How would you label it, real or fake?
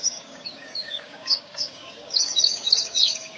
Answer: fake